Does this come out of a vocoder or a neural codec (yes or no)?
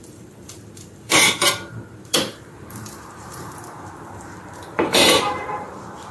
yes